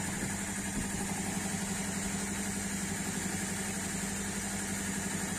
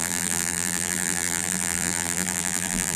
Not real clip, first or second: second